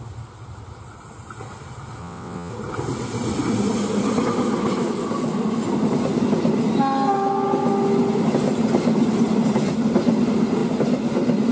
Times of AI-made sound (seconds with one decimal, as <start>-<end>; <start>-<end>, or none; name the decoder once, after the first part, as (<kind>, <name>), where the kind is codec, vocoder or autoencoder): 2.0-2.5 (vocoder, WaveNeXt)